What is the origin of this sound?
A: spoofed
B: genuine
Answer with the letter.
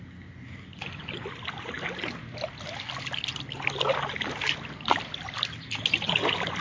B